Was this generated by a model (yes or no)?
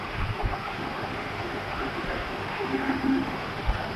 yes